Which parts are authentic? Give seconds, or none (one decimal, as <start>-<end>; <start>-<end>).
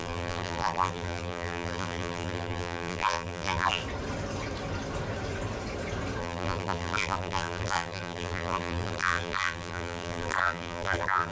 3.8-6.2